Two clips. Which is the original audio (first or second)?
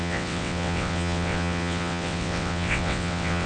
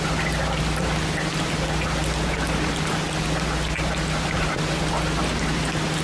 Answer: second